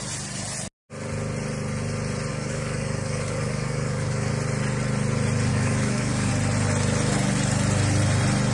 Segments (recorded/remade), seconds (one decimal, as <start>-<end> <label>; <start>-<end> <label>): 0.0-2.3 recorded; 2.3-4.3 remade; 4.3-5.5 recorded; 5.5-6.3 remade; 6.3-8.5 recorded